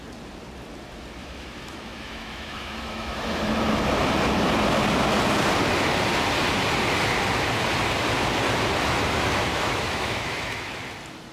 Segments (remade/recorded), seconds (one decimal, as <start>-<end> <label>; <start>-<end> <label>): 0.0-1.2 recorded; 1.2-3.4 remade; 3.4-9.5 recorded; 9.5-10.7 remade; 10.7-11.3 recorded

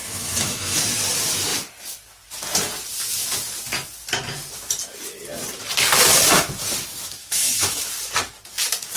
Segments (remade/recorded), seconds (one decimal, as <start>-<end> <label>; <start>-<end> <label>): 0.0-0.8 remade; 0.8-7.2 recorded; 7.2-7.9 remade; 7.9-9.0 recorded

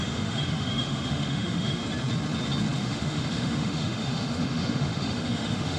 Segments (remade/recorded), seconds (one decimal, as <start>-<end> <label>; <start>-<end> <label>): 0.0-1.8 remade; 1.8-2.8 recorded; 2.8-5.8 remade

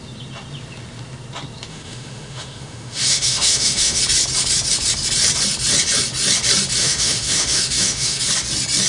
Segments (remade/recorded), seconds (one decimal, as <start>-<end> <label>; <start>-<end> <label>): 0.0-1.7 recorded; 1.7-4.0 remade; 4.0-6.8 recorded; 6.8-8.2 remade; 8.2-8.9 recorded

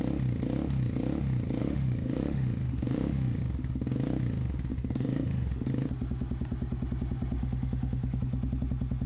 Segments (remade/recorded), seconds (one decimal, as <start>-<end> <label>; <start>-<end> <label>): 0.0-1.6 recorded; 1.6-3.4 remade; 3.4-4.7 recorded; 4.7-5.7 remade; 5.7-7.4 recorded; 7.4-8.2 remade; 8.2-9.1 recorded

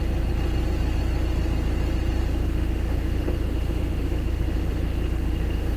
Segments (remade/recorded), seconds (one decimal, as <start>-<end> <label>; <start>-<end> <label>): 0.0-2.2 recorded; 2.2-5.8 remade